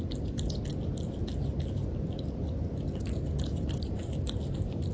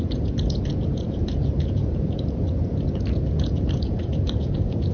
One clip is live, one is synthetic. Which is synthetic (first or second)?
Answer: second